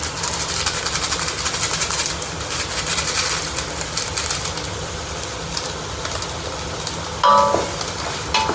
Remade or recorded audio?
recorded